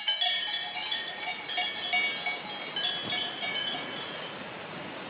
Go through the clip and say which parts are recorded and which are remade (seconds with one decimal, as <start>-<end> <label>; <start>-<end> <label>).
0.0-0.8 recorded; 0.8-1.5 remade; 1.5-3.2 recorded; 3.2-5.1 remade